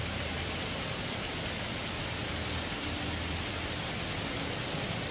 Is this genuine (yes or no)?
yes